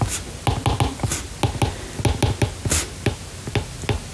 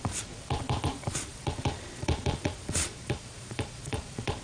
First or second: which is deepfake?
second